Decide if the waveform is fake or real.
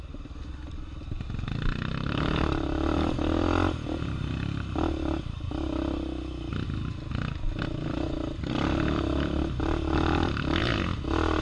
real